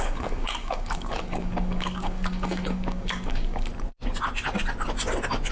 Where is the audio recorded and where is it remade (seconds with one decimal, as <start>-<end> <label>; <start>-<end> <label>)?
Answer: 0.0-3.7 remade; 3.7-5.5 recorded